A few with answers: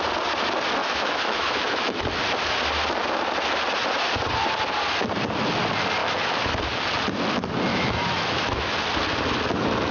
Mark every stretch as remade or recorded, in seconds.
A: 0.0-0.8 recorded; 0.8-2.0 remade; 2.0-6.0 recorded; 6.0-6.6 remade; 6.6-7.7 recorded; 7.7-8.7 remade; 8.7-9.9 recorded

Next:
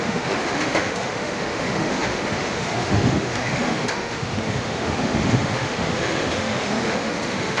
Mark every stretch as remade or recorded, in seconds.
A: 0.0-7.6 remade

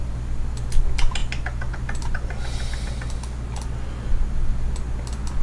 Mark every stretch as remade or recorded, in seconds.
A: 0.0-5.4 recorded

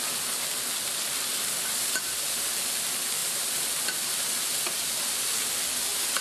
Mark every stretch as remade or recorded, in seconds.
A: 0.0-6.2 recorded

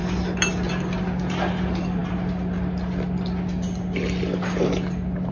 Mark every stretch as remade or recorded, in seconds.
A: 0.0-5.3 recorded